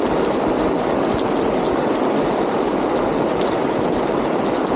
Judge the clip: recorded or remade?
recorded